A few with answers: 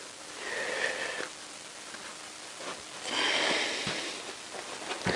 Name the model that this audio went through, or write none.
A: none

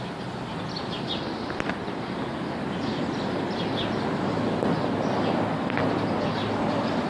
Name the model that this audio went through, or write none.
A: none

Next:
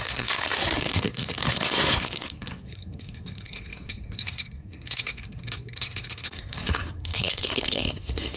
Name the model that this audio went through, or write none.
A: codec, SNAC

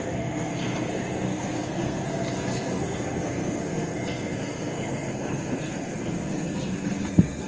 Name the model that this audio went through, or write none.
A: codec, SNAC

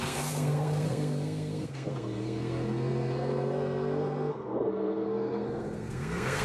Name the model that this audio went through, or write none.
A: codec, SNAC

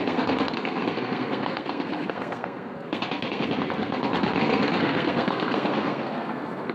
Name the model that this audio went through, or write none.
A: codec, SNAC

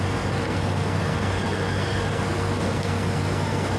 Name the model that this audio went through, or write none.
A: codec, SNAC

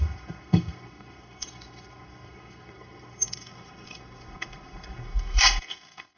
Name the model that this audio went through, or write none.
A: codec, SNAC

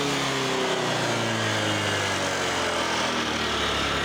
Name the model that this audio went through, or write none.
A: none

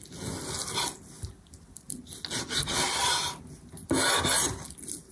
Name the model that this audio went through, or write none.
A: none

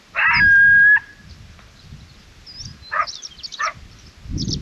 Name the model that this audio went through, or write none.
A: none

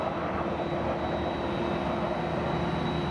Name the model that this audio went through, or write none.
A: none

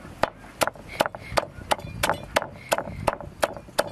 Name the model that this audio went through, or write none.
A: none